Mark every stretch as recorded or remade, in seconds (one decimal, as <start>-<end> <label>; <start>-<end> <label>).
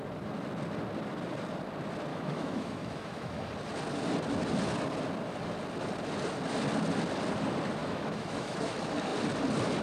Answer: 0.0-2.1 recorded; 2.1-3.5 remade; 3.5-7.8 recorded; 7.8-8.7 remade; 8.7-9.8 recorded